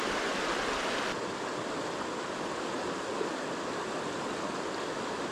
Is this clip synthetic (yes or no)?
no